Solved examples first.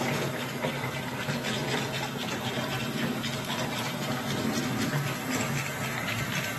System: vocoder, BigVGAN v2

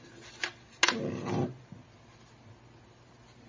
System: none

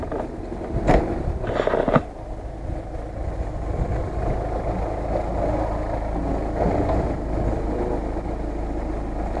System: none